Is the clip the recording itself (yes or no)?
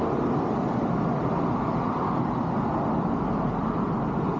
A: yes